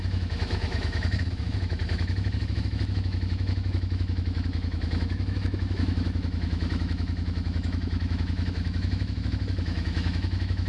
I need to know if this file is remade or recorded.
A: remade